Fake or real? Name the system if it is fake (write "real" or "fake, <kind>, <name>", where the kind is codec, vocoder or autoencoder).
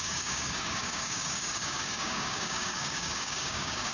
fake, codec, DAC